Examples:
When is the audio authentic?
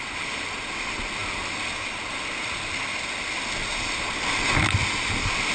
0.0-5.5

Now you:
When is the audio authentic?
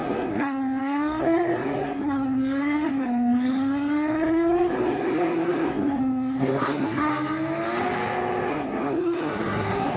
7.1-8.5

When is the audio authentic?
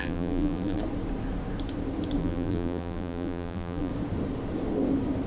0.8-2.2; 3.9-5.3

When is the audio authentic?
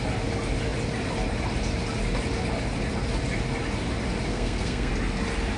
0.0-4.3; 4.9-5.6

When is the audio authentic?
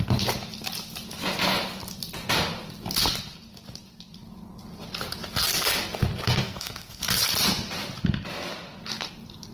0.0-6.4; 7.0-9.5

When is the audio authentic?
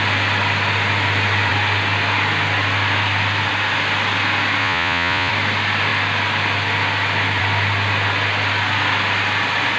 0.0-4.6; 5.3-9.8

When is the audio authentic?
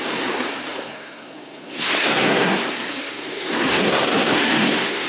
none